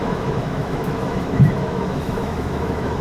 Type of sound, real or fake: fake